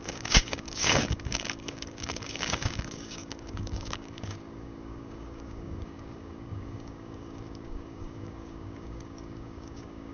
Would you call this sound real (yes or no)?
no